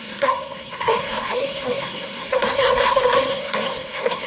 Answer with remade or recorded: remade